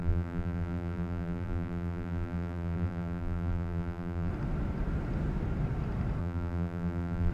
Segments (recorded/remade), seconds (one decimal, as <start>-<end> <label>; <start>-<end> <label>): 0.0-4.3 remade; 4.3-6.2 recorded; 6.2-7.3 remade